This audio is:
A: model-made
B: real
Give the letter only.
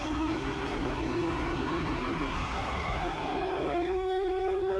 A